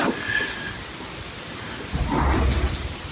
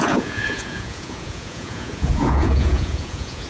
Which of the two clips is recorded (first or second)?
first